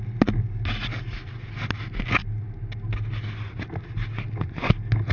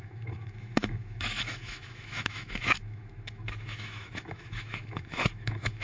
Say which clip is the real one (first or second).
first